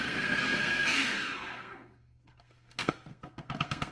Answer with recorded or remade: remade